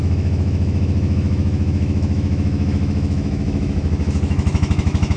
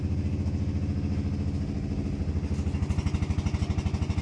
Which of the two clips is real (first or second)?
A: second